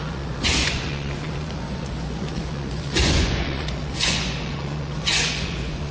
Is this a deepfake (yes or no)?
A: yes